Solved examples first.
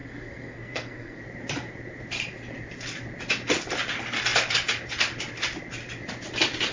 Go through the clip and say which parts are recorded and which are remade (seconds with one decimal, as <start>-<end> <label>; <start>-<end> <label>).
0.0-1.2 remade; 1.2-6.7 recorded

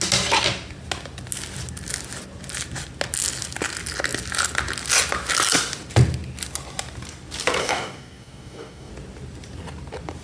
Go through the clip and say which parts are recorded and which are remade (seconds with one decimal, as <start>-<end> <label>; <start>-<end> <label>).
0.0-7.6 recorded; 7.6-8.9 remade; 8.9-10.2 recorded

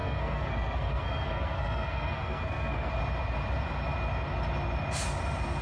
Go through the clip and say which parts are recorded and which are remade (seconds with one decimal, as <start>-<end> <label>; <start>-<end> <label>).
0.0-2.9 remade; 2.9-5.6 recorded